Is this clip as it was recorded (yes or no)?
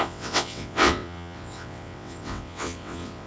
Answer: no